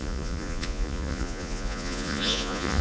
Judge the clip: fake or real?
fake